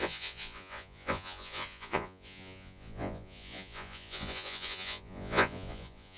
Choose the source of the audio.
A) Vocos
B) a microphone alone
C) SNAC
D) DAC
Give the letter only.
A